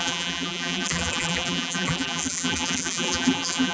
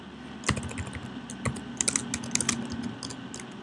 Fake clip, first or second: first